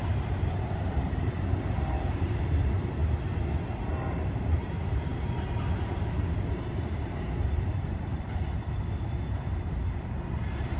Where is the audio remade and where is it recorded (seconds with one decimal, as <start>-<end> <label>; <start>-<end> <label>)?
0.0-3.0 remade; 3.0-3.9 recorded; 3.9-10.8 remade

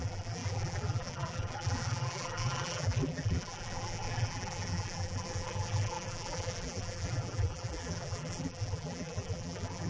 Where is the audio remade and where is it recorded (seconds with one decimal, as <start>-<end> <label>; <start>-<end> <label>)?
0.0-9.9 remade

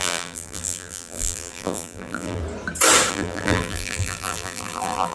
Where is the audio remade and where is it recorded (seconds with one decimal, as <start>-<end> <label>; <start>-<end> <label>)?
0.0-2.4 remade; 2.4-3.1 recorded; 3.1-5.1 remade